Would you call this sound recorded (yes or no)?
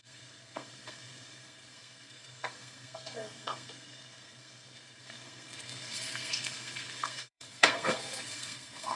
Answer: no